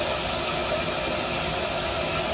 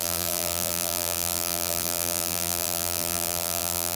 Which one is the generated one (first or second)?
second